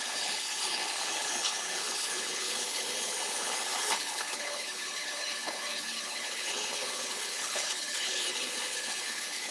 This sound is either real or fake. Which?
fake